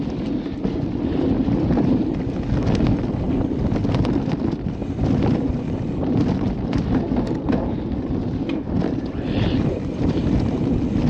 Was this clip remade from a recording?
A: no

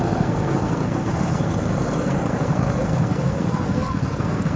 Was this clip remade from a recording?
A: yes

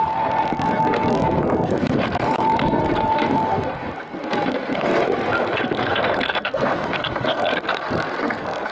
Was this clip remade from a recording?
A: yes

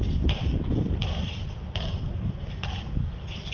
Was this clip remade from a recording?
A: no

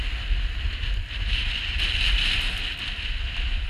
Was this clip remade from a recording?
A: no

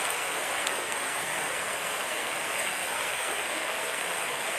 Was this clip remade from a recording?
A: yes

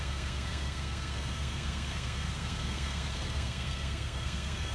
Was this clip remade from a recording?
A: yes